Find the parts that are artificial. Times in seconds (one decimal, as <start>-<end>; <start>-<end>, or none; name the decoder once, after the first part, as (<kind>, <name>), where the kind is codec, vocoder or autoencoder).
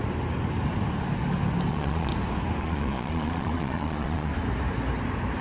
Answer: 1.7-2.1 (vocoder, Vocos); 2.6-4.3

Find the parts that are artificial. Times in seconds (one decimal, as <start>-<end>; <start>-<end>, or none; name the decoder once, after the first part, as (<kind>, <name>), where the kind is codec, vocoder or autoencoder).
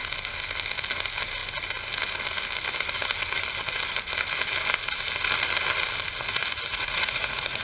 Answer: 6.7-7.6 (vocoder, Vocos)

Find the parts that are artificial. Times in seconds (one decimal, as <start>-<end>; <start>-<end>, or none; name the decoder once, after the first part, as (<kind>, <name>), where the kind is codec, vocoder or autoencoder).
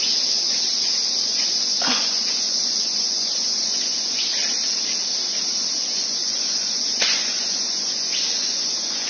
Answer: 0.0-0.7 (vocoder, Vocos); 1.2-4.3; 5.7-9.1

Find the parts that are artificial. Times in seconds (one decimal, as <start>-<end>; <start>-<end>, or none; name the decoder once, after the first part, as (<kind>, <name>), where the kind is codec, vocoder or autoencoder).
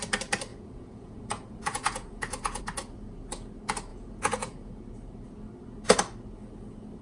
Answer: 0.5-2.6 (vocoder, Vocos); 3.9-4.7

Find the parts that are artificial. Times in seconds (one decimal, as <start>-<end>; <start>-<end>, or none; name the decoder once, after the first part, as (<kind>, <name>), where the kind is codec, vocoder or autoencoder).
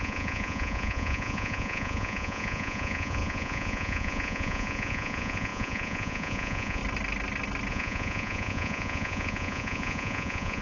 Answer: 0.0-6.8 (vocoder, Vocos); 7.7-10.6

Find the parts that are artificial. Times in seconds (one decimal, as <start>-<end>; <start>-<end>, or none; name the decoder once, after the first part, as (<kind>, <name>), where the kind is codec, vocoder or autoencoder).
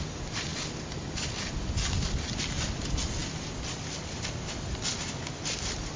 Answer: none